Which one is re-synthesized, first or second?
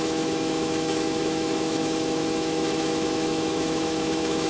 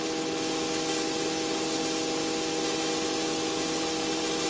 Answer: first